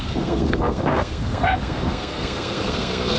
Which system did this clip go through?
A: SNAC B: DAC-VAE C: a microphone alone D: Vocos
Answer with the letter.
A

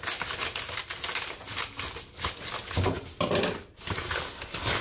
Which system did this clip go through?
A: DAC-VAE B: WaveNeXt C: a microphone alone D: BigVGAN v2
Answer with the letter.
C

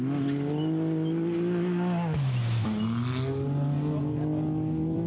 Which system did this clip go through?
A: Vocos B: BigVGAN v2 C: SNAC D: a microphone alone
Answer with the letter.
D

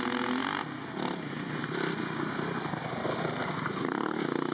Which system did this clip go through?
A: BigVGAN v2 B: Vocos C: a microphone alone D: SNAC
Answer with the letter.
C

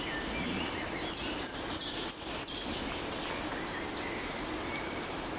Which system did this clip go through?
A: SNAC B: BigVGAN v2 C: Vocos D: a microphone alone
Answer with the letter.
D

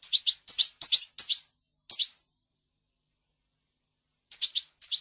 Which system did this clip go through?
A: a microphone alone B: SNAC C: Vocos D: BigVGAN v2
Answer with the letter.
A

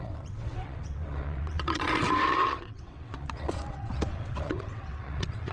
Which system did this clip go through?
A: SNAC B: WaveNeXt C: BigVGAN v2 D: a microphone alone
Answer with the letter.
B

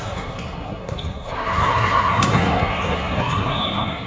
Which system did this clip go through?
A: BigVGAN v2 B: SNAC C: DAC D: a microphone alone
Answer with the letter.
B